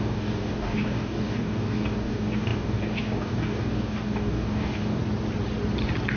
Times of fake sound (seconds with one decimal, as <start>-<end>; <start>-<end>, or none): 0.0-5.0

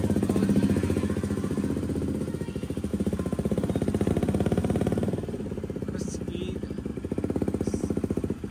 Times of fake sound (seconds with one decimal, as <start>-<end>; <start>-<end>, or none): none

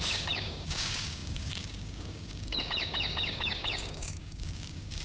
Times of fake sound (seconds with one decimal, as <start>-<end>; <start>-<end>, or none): 0.0-5.0

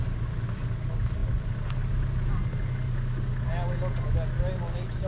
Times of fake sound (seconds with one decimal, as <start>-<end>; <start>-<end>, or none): none

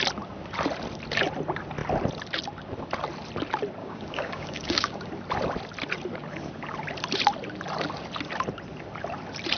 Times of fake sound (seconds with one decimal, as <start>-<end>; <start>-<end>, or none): 3.8-5.1

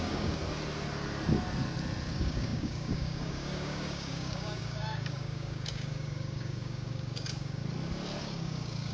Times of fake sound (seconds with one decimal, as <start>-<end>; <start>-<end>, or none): 0.0-0.4; 2.1-7.6; 8.2-8.9

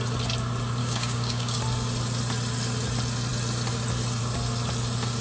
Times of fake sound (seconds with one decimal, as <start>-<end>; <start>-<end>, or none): 0.8-1.6

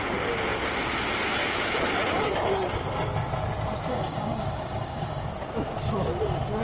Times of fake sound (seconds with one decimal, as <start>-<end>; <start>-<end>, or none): 3.9-5.3